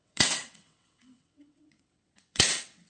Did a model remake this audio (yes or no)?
yes